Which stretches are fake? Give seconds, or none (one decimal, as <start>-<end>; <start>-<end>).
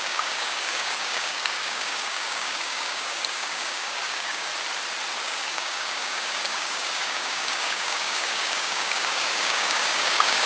0.0-4.5; 5.2-10.5